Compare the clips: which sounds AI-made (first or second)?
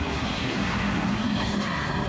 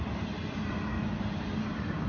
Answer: first